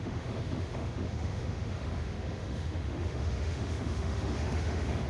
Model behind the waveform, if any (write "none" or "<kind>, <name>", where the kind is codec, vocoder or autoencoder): autoencoder, DAC-VAE